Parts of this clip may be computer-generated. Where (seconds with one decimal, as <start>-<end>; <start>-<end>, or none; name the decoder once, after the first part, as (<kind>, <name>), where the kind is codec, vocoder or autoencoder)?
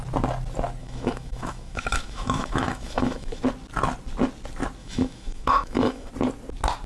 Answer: 0.8-3.4 (autoencoder, DAC-VAE); 4.8-6.1